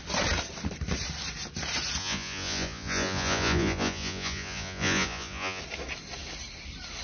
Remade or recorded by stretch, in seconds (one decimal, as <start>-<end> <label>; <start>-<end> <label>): 0.0-2.0 recorded; 2.0-5.6 remade; 5.6-7.0 recorded